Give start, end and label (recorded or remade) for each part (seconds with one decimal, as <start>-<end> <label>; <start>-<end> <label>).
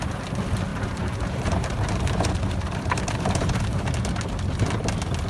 0.0-0.7 recorded; 0.7-3.9 remade; 3.9-5.3 recorded